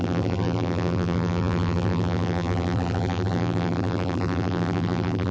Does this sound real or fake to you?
fake